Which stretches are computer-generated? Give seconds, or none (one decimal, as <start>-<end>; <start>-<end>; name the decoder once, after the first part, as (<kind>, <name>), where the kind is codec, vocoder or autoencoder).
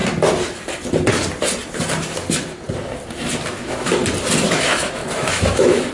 3.5-4.0 (autoencoder, DAC-VAE); 4.5-5.9